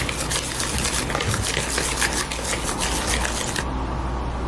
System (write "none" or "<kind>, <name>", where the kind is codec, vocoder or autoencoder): none